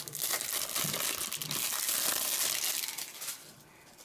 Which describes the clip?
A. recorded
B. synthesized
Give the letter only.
A